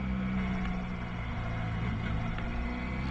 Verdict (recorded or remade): recorded